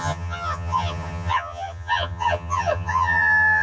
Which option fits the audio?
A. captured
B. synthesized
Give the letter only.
B